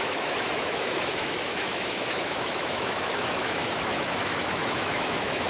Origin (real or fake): fake